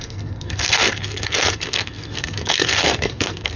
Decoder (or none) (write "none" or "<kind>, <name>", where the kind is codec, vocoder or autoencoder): codec, SNAC